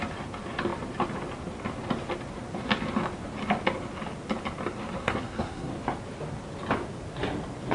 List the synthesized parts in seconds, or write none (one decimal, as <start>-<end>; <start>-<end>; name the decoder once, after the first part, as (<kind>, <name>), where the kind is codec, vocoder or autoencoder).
5.0-5.7 (codec, SNAC)